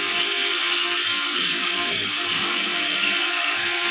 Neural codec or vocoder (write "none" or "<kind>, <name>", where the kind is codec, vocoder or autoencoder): codec, SNAC